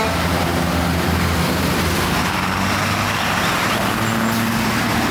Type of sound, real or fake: real